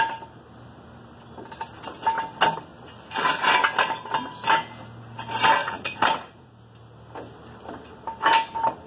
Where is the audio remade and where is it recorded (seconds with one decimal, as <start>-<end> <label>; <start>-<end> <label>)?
0.0-5.6 recorded; 5.6-6.5 remade; 6.5-8.9 recorded